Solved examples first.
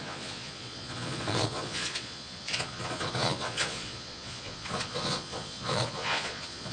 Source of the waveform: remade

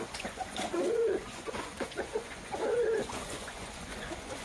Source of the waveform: remade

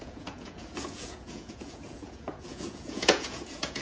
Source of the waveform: remade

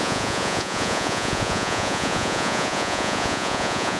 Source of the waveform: remade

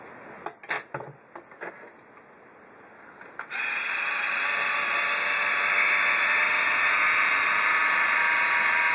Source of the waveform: recorded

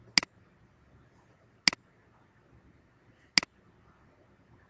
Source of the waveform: recorded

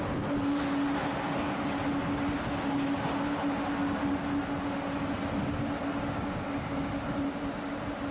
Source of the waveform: recorded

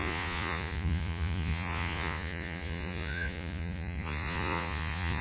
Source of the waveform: remade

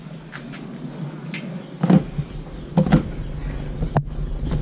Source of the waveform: recorded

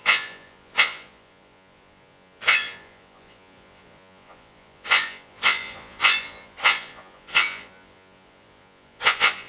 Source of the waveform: remade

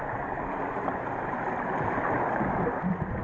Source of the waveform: recorded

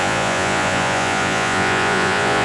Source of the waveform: remade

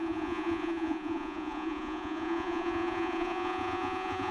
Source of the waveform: remade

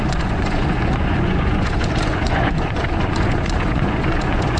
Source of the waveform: remade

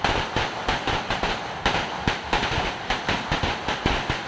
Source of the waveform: recorded